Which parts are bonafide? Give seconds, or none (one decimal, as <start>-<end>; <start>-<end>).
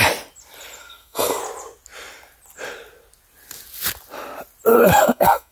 0.0-0.8; 1.4-4.7